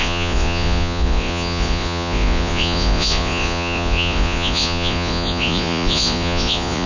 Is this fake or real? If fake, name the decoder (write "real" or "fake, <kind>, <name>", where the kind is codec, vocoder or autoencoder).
fake, vocoder, Vocos